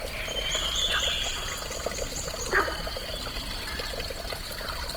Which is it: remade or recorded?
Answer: recorded